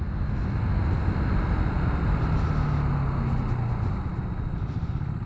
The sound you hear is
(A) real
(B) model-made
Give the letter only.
A